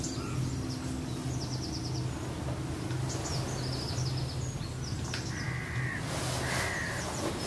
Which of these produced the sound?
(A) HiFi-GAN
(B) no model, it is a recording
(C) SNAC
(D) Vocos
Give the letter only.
B